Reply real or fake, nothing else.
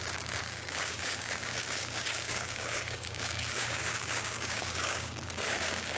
fake